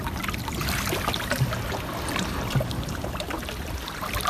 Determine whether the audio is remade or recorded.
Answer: recorded